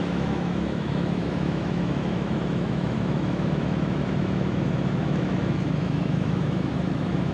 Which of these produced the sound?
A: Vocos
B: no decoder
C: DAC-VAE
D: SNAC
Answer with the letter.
C